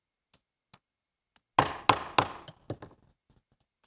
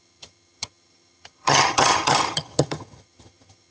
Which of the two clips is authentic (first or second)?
first